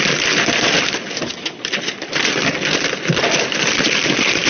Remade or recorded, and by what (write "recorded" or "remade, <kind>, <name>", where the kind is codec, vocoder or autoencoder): recorded